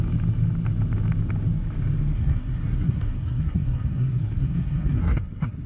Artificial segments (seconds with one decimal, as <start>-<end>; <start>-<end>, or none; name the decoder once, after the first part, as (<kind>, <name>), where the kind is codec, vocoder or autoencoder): 2.1-5.7 (codec, SNAC)